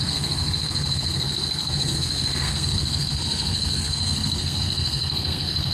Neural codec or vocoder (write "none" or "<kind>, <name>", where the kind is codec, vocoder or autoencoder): codec, SNAC